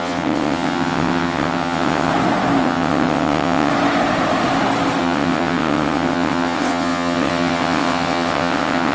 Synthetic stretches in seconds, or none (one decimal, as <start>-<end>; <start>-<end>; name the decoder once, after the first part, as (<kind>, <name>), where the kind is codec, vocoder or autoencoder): 0.0-2.1 (vocoder, WaveNeXt); 2.6-3.7; 5.0-8.9